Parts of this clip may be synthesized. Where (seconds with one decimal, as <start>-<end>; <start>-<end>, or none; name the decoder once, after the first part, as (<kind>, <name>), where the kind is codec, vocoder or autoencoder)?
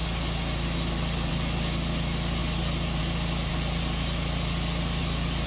none